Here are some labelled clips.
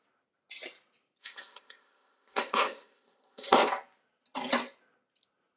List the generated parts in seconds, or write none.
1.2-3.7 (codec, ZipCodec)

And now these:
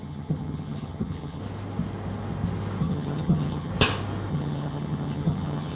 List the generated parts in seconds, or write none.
0.0-1.4 (vocoder, HiFi-GAN); 2.8-3.7; 4.3-5.7

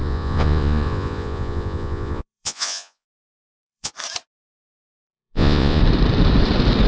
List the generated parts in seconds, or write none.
0.0-3.9 (vocoder, Vocos); 4.9-5.8

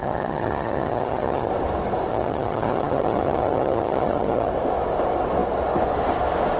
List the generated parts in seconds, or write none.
0.0-1.5 (vocoder, HiFi-GAN); 2.1-4.5

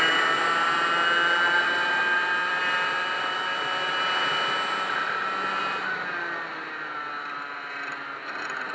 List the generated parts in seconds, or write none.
none

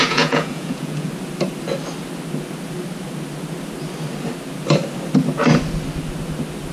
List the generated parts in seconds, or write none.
0.0-1.1 (vocoder, Vocos)